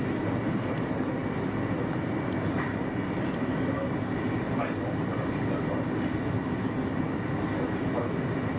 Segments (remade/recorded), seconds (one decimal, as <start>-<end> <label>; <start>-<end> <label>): 0.0-8.6 recorded